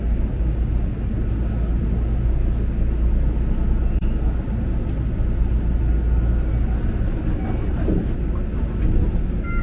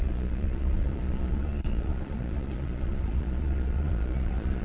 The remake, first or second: second